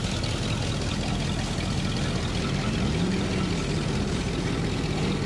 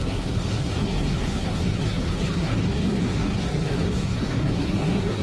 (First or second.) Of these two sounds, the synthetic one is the second